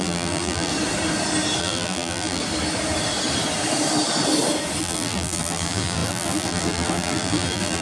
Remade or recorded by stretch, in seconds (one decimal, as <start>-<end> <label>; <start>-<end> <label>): 0.0-0.7 remade; 0.7-1.6 recorded; 1.6-2.4 remade; 2.4-4.8 recorded; 4.8-7.8 remade